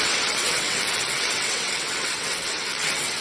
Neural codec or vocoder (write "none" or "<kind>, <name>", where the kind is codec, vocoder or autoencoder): vocoder, WaveNeXt